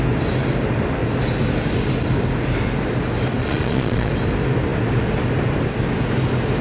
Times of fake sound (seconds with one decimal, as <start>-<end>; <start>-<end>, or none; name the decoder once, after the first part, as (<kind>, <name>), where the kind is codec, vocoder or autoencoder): 3.4-4.1 (vocoder, Vocos)